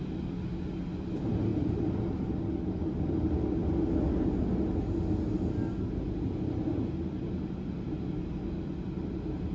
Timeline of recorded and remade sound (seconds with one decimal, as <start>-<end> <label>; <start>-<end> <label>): 0.0-9.5 recorded